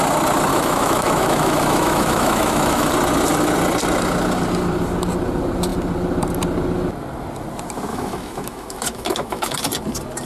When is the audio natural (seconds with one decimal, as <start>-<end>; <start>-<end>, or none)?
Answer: 0.0-0.5; 2.9-7.9; 9.6-10.3